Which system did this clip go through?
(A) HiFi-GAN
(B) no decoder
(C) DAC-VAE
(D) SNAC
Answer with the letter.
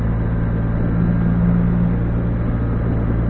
B